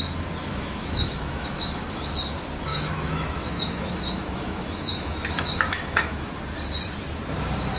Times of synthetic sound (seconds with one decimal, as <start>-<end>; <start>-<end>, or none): 0.5-2.1; 2.7-6.3